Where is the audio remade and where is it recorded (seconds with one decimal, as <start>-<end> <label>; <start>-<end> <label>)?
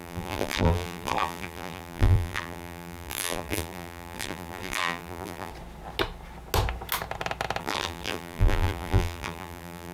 0.0-5.5 remade; 5.5-7.6 recorded; 7.6-9.9 remade